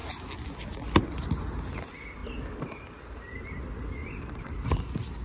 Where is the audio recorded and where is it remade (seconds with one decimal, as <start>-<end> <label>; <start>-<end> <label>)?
0.0-2.2 recorded; 2.2-3.4 remade; 3.4-4.0 recorded; 4.0-4.6 remade; 4.6-5.2 recorded